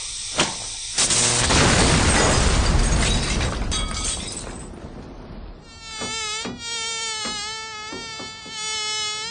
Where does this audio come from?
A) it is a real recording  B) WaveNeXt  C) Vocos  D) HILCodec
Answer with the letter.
A